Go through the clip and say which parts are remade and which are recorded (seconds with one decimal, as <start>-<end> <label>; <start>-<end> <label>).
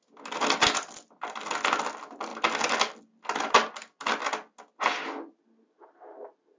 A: 0.0-6.6 recorded